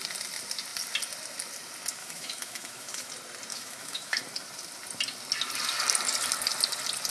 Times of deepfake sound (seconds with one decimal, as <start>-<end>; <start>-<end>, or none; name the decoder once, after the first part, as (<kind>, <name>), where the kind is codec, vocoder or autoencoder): 2.0-3.1 (autoencoder, DAC-VAE); 3.5-4.2